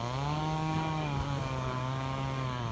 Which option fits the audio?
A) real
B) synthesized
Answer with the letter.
B